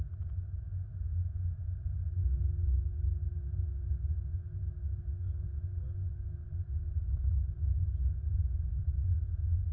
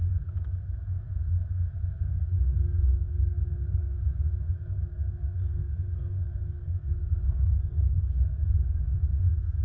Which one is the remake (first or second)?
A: second